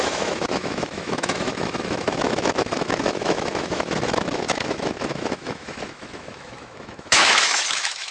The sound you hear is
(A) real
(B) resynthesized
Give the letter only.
B